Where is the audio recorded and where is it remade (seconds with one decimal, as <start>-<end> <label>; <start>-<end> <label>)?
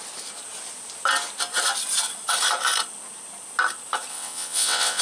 0.0-4.1 recorded; 4.1-5.0 remade